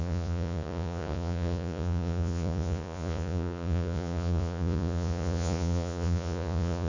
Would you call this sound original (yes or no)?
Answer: no